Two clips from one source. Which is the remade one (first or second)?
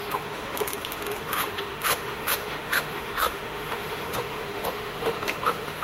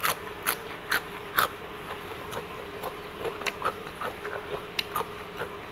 first